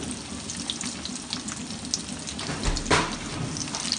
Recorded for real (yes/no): yes